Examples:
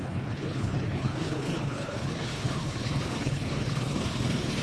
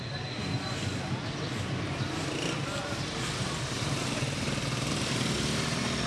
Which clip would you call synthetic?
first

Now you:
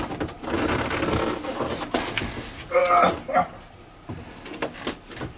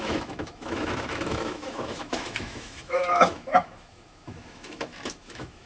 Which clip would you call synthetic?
second